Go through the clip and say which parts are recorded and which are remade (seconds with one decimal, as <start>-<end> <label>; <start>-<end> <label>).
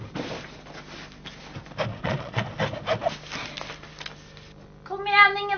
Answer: 0.0-1.9 recorded; 1.9-2.4 remade; 2.4-5.6 recorded